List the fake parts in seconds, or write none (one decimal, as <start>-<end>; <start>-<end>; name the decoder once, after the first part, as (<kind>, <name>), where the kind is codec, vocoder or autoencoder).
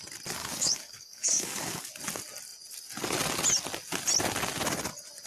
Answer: 0.4-1.9 (codec, DAC)